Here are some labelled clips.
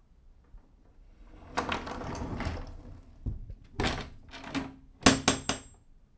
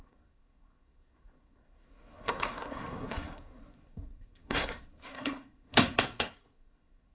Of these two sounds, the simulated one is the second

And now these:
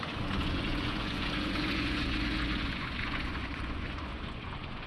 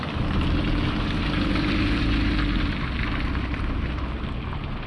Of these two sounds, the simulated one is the first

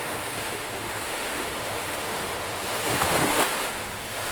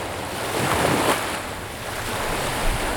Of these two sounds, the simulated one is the first